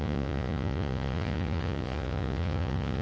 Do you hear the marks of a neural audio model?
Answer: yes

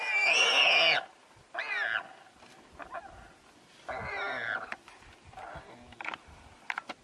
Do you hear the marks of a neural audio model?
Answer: no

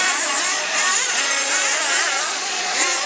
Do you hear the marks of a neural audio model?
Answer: yes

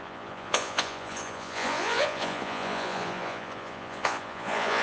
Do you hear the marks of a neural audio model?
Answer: yes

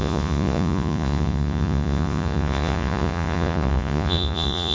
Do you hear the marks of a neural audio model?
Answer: yes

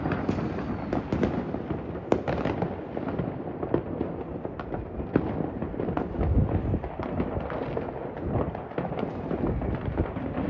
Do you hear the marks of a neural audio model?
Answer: no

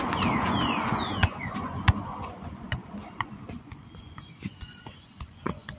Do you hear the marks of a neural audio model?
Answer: yes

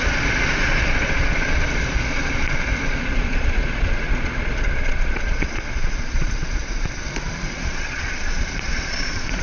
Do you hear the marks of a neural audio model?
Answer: yes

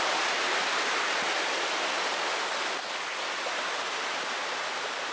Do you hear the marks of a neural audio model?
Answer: no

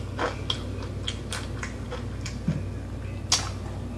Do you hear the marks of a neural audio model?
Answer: no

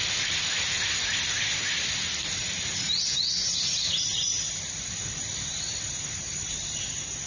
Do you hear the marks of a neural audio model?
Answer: no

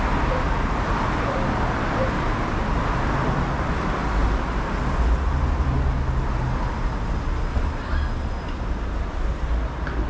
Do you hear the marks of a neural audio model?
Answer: no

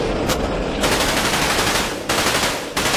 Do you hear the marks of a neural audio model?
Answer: no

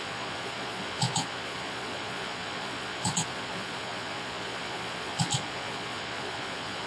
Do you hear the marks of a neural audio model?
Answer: yes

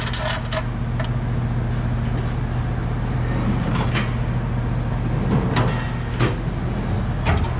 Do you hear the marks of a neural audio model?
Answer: no